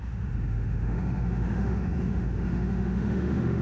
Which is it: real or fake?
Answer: fake